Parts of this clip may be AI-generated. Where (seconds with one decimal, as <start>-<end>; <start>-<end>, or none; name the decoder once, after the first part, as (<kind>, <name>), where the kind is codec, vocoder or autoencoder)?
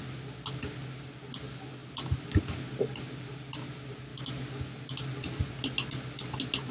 none